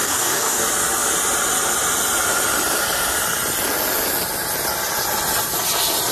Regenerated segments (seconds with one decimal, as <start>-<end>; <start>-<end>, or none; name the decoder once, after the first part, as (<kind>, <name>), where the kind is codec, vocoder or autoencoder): 0.0-0.6 (codec, DAC)